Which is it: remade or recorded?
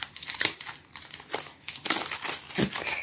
recorded